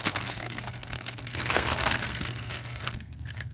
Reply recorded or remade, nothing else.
remade